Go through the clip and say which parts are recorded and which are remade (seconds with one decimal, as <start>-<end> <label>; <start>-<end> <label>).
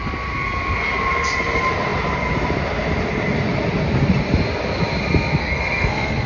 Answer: 0.0-5.4 recorded; 5.4-6.3 remade